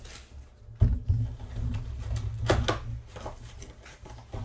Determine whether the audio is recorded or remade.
recorded